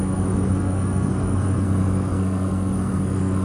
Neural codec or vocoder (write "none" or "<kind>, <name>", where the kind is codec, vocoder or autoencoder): codec, SNAC